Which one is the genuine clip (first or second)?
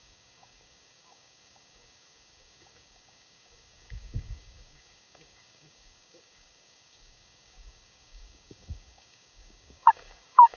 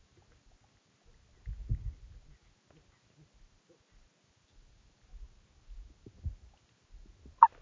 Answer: second